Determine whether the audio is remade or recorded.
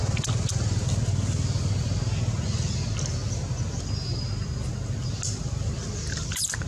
recorded